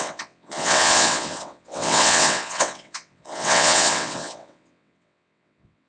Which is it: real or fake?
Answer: fake